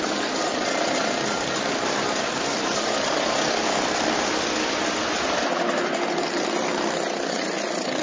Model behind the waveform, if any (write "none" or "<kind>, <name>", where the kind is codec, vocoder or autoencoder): none